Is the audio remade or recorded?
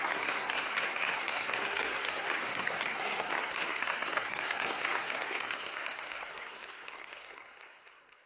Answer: remade